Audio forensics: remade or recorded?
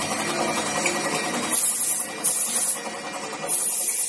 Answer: recorded